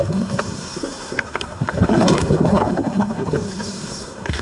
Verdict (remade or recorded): remade